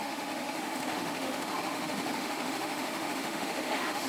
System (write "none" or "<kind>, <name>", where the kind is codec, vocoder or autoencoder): autoencoder, DAC-VAE